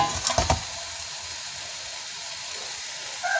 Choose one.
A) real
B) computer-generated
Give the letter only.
A